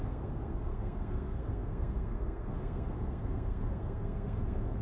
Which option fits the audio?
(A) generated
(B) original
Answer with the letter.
A